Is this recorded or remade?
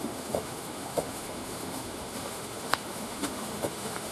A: remade